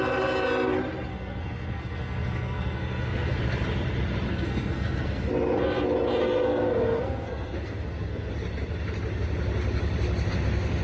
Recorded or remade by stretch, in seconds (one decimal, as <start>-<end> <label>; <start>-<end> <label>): 0.0-1.1 recorded; 1.1-3.4 remade; 3.4-4.3 recorded; 4.3-5.2 remade; 5.2-6.2 recorded; 6.2-8.3 remade; 8.3-10.8 recorded